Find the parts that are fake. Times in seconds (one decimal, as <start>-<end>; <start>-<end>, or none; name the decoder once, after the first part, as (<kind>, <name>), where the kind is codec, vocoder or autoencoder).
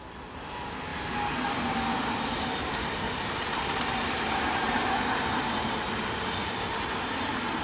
0.9-5.5 (vocoder, BigVGAN v2)